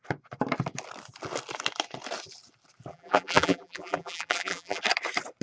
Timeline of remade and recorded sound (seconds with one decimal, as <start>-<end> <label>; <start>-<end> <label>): 0.0-2.9 recorded; 2.9-4.8 remade; 4.8-5.4 recorded